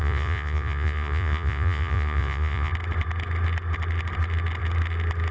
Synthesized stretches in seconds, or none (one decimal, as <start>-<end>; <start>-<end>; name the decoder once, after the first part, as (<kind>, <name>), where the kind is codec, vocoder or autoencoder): 0.0-2.7 (vocoder, Vocos)